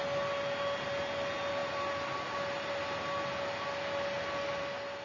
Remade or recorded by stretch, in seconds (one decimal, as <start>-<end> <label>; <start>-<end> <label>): 0.0-5.0 recorded